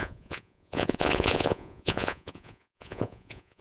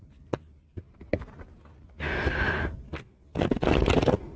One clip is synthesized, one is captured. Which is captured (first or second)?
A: second